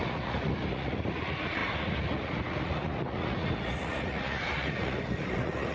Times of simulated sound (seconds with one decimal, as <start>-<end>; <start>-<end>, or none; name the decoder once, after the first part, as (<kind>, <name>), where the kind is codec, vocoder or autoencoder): 0.0-5.7 (vocoder, Vocos)